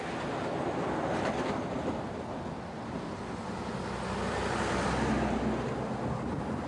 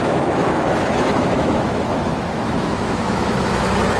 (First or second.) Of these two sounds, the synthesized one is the second